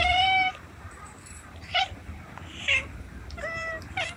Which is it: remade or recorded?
remade